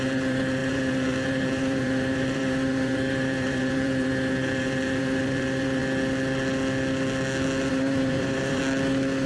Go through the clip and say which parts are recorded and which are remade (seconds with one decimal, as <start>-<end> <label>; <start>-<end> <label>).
0.0-5.8 remade; 5.8-7.7 recorded; 7.7-8.6 remade; 8.6-9.3 recorded